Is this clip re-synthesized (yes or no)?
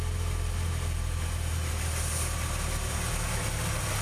no